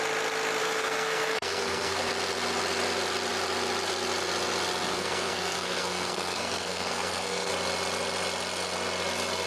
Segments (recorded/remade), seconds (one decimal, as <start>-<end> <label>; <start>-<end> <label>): 0.0-0.6 recorded; 0.6-2.1 remade; 2.1-4.9 recorded; 4.9-7.5 remade; 7.5-9.5 recorded